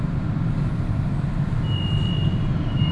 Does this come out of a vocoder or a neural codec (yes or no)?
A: no